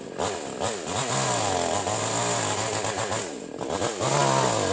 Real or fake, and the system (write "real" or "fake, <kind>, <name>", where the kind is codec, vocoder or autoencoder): real